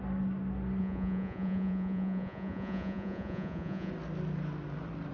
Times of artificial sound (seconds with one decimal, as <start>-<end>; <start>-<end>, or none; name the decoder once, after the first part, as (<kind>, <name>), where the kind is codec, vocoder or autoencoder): 0.8-3.9 (vocoder, Vocos)